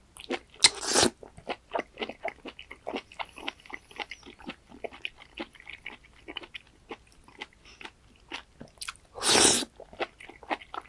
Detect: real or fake real